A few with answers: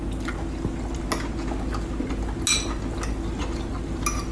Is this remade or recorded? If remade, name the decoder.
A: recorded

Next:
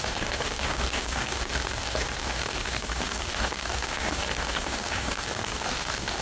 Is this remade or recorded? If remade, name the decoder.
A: remade, codec, DAC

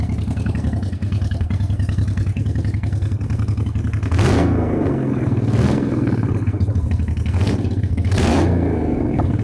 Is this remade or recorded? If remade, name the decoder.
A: remade, codec, SNAC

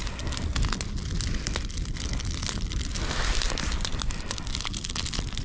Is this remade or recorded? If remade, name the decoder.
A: recorded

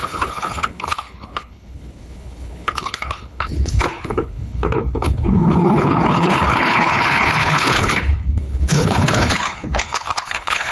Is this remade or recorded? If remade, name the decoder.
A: remade, codec, HILCodec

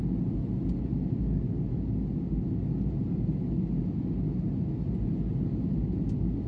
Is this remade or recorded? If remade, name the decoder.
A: recorded